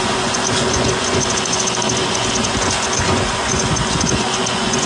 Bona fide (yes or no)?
no